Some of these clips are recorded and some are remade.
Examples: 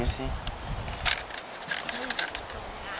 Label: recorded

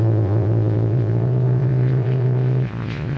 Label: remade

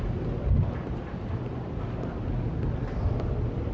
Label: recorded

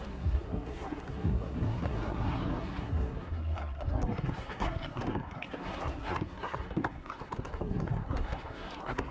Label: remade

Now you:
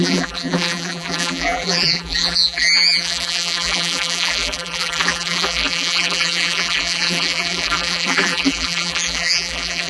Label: remade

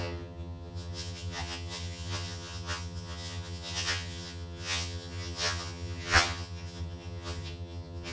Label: remade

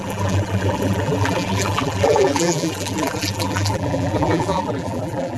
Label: remade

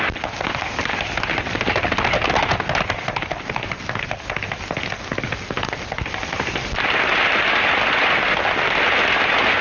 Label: recorded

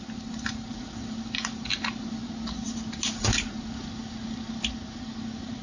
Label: recorded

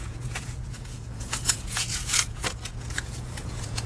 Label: remade